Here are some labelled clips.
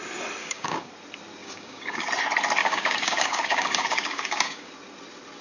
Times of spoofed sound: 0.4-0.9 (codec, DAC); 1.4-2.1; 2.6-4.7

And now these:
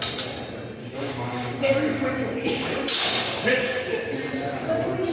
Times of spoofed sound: 0.8-3.9 (codec, DAC)

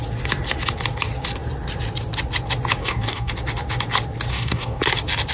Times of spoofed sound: 2.8-3.3 (codec, DAC); 4.3-4.8

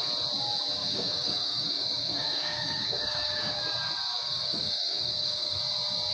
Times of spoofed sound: 0.8-3.6 (codec, DAC); 4.1-5.6

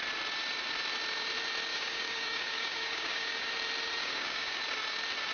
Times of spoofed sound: 1.7-3.5 (codec, DAC); 4.0-4.6